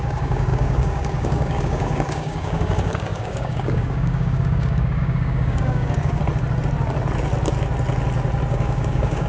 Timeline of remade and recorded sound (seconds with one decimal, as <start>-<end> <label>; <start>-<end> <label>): 0.0-6.2 remade; 6.2-8.5 recorded; 8.5-9.3 remade